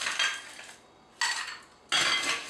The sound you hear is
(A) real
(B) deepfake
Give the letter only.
A